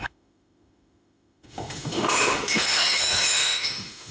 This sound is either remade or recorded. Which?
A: remade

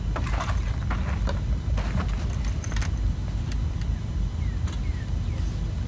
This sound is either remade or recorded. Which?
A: recorded